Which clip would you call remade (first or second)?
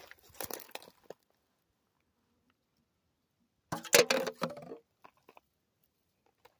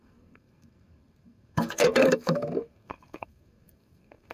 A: second